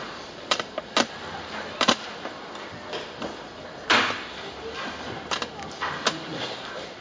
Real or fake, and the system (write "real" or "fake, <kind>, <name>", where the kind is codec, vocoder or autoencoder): real